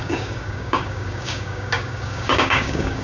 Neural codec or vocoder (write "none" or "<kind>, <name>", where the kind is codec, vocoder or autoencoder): codec, DAC